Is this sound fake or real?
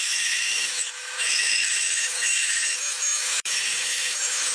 fake